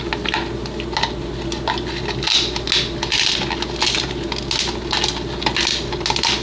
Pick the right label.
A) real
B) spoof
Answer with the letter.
A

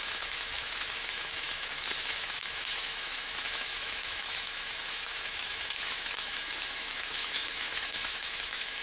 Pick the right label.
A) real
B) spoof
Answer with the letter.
B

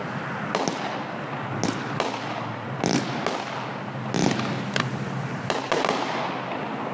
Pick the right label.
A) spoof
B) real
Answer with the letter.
B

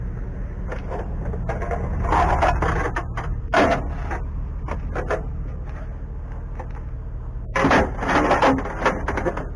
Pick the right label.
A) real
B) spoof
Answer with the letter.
A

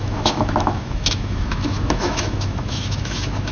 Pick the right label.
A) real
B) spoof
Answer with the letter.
B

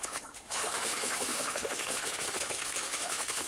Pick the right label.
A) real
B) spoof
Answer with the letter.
B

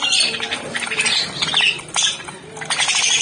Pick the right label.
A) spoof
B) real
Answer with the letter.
B